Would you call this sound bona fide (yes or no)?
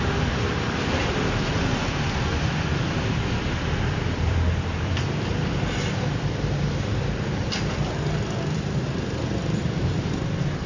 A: no